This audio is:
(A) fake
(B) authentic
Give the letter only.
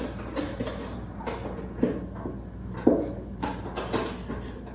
B